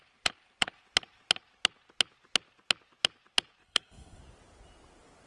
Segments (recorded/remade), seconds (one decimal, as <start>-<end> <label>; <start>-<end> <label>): 0.0-3.6 recorded; 3.6-4.2 remade; 4.2-5.3 recorded